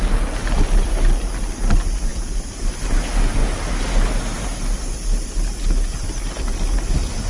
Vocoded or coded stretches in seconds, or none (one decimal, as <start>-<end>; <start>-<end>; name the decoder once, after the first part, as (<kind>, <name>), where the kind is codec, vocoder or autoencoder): 0.4-1.6 (vocoder, BigVGAN v2); 2.1-2.7